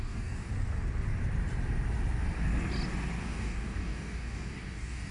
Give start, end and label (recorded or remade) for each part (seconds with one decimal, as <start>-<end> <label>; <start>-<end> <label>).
0.0-0.5 remade; 0.5-3.2 recorded; 3.2-5.1 remade